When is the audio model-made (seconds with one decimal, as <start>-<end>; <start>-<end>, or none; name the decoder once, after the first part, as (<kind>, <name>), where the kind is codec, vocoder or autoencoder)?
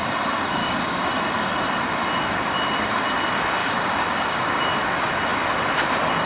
0.6-1.1 (codec, DAC); 3.6-4.6